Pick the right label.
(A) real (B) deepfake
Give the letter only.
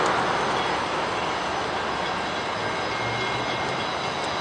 A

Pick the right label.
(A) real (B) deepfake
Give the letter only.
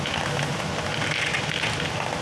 A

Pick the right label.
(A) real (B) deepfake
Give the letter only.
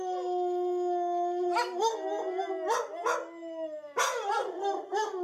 A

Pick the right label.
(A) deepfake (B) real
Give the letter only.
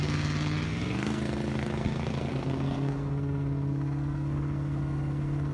A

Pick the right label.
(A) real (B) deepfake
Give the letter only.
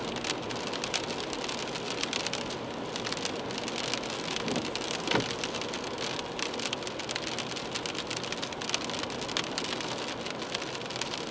A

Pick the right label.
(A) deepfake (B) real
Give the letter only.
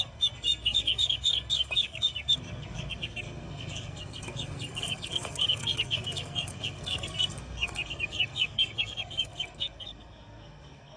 A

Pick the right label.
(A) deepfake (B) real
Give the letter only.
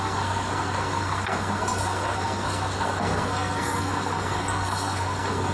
A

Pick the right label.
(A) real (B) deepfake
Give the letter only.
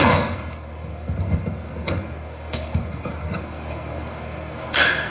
B